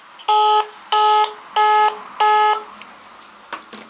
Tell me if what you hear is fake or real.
real